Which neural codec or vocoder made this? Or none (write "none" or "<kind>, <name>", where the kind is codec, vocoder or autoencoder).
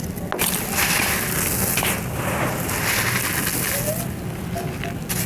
none